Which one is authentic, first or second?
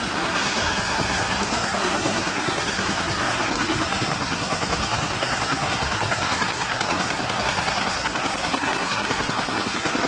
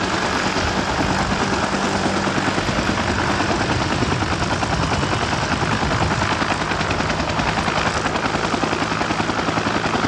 second